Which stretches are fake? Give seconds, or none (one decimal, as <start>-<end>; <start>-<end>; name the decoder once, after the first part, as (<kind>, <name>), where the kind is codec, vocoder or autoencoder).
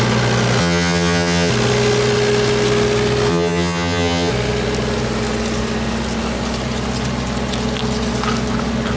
0.6-1.5 (vocoder, HiFi-GAN); 3.3-4.3